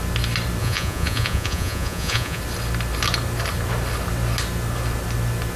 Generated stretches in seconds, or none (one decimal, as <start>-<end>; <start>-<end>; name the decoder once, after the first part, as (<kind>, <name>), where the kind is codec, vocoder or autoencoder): 0.6-2.4 (vocoder, Vocos)

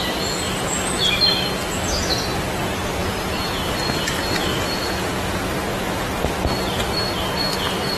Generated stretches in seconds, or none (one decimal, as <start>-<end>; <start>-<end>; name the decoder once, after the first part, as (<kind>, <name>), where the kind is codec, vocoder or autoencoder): 3.0-3.6 (vocoder, Vocos); 4.5-5.4

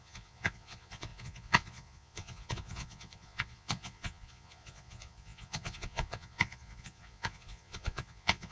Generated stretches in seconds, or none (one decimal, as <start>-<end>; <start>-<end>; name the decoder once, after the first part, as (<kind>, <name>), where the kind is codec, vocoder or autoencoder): 0.0-8.5 (vocoder, Vocos)

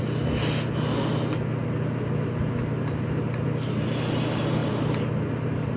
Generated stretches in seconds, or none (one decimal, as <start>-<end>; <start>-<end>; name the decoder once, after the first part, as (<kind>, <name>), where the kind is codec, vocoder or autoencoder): none

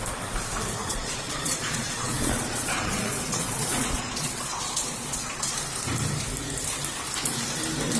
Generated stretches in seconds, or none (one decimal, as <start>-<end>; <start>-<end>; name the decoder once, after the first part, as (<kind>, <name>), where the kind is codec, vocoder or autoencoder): 0.8-5.5 (vocoder, Vocos)